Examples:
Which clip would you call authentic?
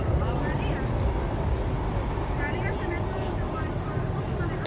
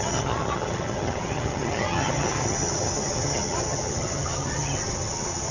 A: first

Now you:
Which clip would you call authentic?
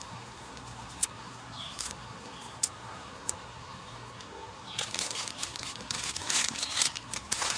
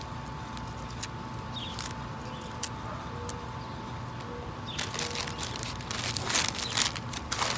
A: second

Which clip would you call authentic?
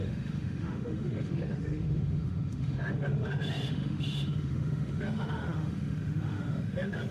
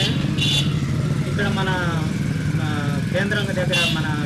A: second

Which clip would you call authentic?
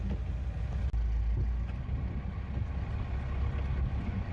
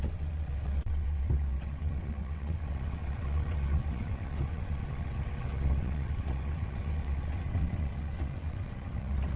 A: first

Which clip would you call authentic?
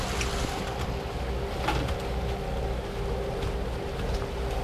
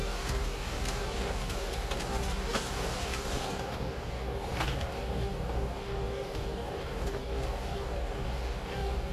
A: first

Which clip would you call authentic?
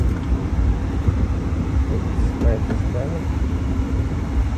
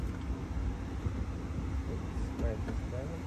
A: second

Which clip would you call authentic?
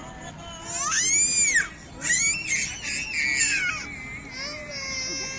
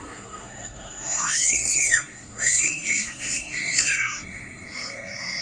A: first